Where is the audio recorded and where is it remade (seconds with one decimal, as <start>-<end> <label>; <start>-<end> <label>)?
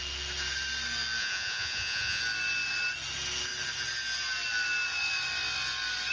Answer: 0.0-1.2 recorded; 1.2-2.2 remade; 2.2-6.1 recorded